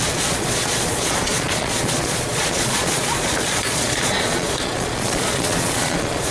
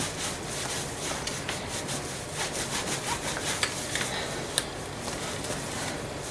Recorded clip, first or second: second